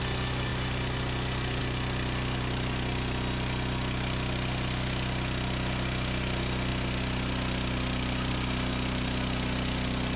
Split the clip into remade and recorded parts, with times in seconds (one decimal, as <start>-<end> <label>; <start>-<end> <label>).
0.0-10.2 recorded